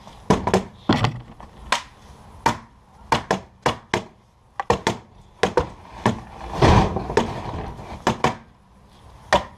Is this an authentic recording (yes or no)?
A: yes